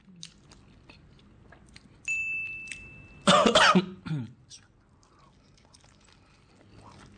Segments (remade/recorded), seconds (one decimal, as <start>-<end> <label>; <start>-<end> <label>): 0.0-7.2 recorded